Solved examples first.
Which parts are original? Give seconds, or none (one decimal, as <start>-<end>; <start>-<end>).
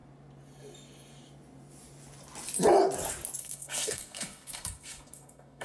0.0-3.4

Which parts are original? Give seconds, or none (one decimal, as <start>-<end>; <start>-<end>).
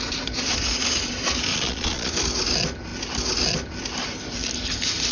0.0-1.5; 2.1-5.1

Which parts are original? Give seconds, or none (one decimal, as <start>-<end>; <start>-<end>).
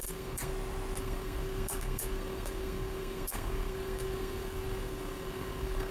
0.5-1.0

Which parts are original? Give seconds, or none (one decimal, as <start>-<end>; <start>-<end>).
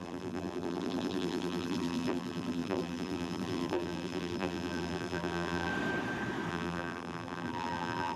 5.7-6.5